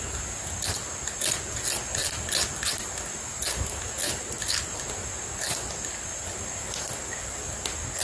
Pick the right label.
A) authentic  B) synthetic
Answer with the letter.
A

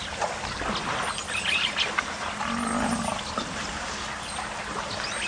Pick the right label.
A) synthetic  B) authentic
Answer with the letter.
B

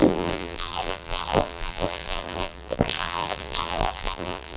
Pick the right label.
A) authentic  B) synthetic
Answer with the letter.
B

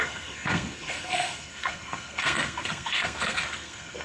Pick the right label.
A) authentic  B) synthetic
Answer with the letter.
B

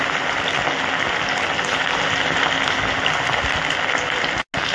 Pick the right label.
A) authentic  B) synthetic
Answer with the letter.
A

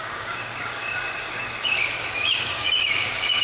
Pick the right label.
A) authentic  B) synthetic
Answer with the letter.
B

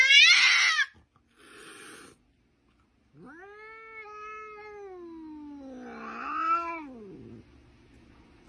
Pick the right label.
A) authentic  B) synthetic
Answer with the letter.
A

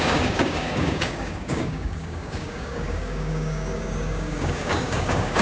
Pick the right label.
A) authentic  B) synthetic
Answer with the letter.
B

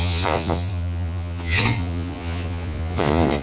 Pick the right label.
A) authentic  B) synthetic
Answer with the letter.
B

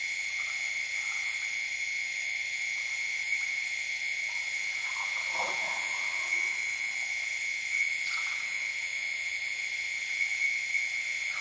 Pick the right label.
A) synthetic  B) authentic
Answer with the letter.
A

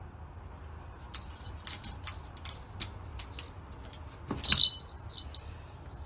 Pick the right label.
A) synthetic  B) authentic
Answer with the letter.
B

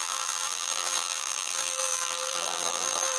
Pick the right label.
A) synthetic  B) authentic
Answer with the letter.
A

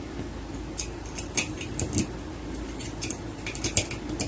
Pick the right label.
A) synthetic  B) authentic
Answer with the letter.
B